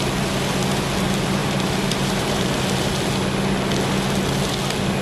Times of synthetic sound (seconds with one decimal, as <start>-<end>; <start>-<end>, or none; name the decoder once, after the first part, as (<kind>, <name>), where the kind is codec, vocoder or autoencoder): 1.4-2.9 (vocoder, BigVGAN v2)